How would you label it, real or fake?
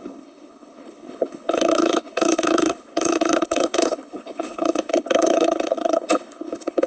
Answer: fake